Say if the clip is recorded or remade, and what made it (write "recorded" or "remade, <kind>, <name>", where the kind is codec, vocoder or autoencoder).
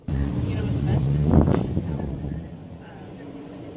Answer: remade, vocoder, Vocos